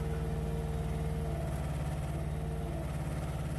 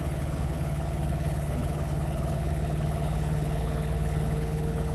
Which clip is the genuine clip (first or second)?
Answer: first